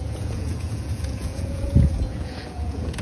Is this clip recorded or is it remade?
remade